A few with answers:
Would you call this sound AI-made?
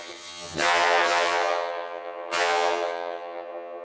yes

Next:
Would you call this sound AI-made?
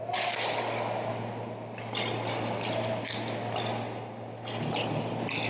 no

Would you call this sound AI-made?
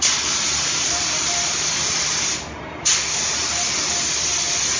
no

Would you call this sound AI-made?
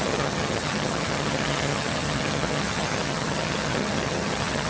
yes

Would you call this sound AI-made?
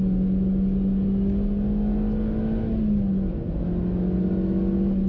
no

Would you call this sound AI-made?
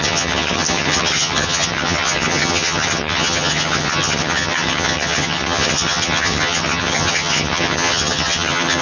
yes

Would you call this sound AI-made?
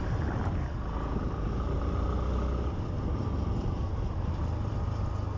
no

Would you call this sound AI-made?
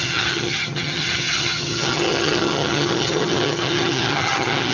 yes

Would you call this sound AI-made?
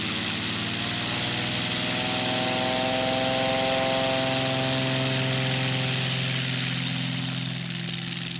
no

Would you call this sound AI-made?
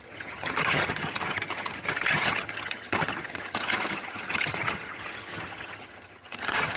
yes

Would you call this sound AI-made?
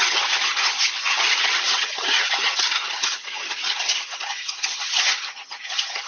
yes